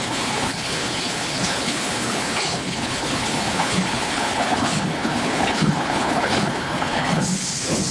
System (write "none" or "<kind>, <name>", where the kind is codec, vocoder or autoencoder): codec, HILCodec